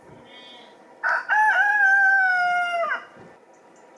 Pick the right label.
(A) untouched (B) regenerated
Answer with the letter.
A